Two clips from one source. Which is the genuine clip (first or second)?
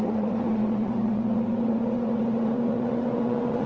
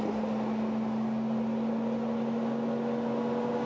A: second